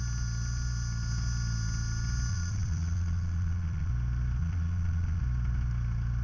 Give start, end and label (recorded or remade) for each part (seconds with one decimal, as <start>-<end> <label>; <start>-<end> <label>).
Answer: 0.0-2.3 recorded; 2.3-3.9 remade; 3.9-4.4 recorded; 4.4-5.2 remade; 5.2-6.2 recorded